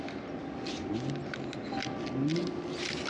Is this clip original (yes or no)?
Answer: yes